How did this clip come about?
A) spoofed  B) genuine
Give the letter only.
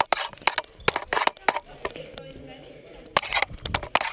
B